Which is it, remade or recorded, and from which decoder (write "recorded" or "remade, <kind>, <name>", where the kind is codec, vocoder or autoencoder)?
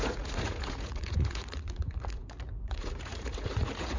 remade, vocoder, Vocos